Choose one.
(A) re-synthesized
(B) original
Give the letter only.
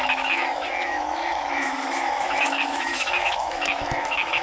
A